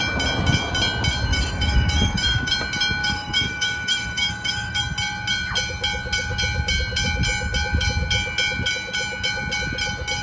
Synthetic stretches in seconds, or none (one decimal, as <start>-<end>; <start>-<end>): 1.3-2.5; 3.0-4.8